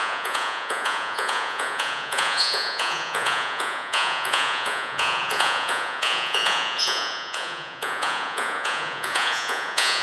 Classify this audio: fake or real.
fake